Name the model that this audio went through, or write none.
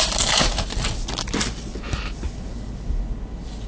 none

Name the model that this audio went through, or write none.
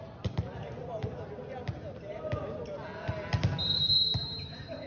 none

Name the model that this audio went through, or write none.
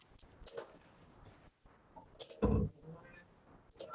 none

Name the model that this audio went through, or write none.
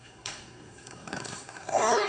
codec, SNAC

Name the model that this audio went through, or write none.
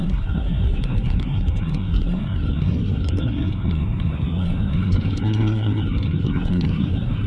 codec, SNAC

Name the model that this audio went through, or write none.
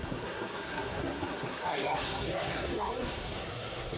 codec, SNAC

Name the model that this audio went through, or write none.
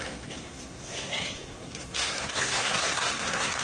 codec, SNAC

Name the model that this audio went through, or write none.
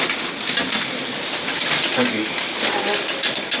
none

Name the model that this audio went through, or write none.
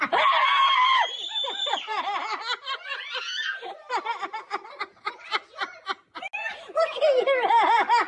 none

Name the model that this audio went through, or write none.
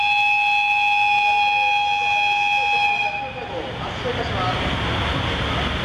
none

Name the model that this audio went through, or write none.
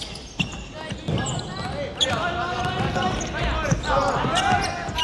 none